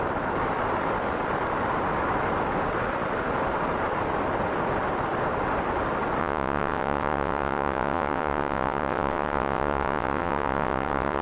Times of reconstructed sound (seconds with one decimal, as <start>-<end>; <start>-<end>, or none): 6.2-11.2